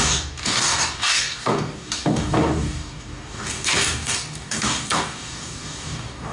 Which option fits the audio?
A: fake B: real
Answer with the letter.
A